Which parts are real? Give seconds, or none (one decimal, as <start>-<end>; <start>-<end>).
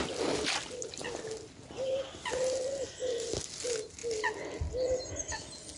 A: 0.0-5.8